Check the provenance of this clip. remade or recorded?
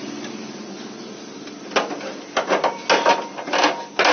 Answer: recorded